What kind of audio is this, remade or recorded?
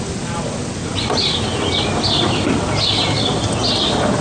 recorded